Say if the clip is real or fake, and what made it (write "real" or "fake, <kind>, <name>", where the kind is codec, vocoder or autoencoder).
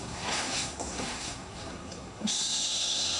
fake, codec, SNAC